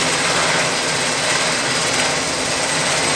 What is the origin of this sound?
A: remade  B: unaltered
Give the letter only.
B